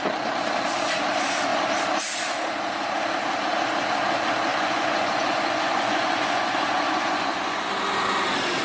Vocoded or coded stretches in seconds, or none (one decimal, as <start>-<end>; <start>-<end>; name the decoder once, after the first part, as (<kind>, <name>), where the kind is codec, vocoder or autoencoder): 4.5-7.7 (vocoder, Vocos)

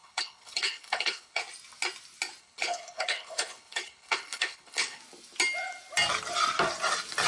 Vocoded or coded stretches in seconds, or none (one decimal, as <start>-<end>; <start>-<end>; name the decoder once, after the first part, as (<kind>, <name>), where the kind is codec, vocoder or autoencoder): 0.0-1.4 (codec, HILCodec); 2.4-5.0